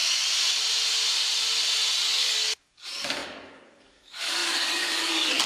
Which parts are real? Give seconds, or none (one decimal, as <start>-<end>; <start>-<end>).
0.0-2.0